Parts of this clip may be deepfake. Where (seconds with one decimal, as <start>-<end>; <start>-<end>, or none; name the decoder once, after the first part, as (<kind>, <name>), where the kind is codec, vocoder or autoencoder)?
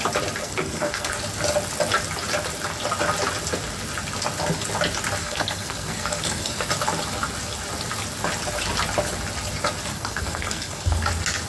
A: 0.4-1.1 (codec, SNAC); 5.2-6.7; 9.9-11.1